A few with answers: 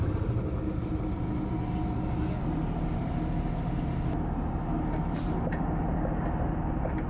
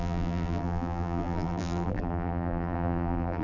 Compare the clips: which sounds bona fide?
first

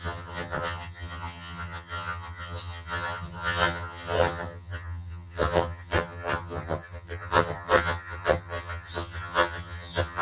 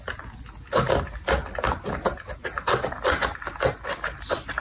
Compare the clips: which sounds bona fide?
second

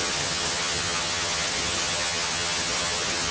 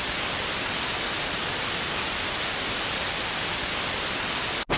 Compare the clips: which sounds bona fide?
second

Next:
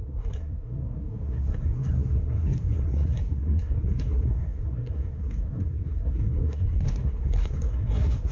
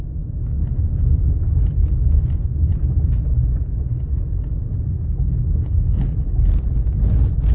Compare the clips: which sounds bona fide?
second